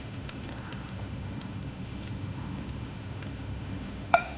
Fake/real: fake